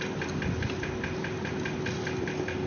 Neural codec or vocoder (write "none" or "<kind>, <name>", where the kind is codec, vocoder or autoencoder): none